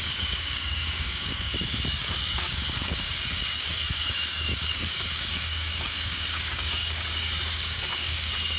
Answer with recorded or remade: remade